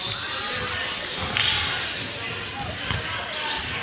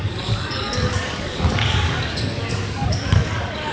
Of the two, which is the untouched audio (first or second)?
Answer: first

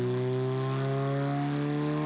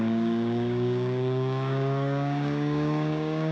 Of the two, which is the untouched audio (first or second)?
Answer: first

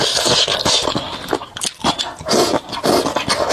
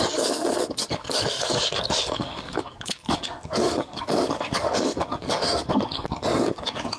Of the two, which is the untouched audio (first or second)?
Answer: first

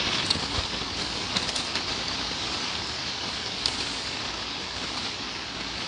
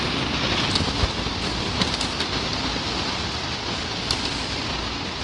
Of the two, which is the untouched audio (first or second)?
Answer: second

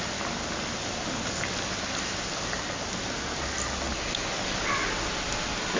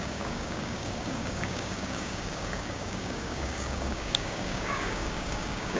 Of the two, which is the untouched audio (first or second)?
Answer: first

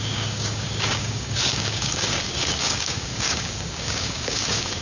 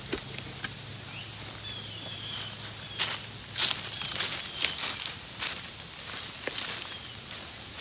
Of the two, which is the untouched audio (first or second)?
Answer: second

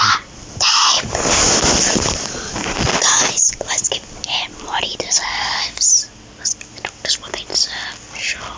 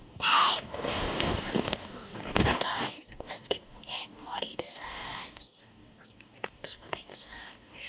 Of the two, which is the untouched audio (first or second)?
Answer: first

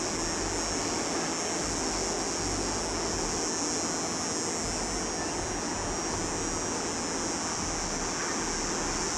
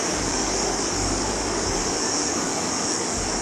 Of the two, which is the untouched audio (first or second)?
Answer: first